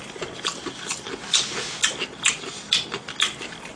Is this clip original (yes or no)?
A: yes